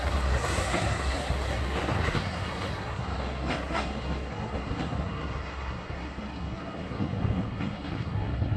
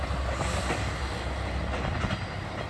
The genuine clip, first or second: second